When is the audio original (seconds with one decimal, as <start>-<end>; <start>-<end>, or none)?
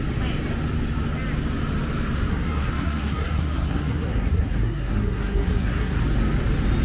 0.0-2.3; 6.0-6.8